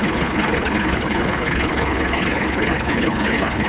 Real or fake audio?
fake